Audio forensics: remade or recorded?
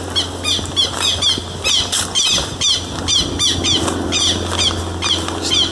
recorded